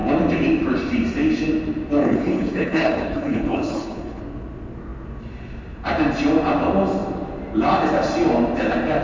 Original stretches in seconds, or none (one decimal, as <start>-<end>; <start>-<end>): 0.0-2.0; 4.2-9.0